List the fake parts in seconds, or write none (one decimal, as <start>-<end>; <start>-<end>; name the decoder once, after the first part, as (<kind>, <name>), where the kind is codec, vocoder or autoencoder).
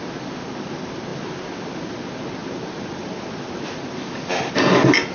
none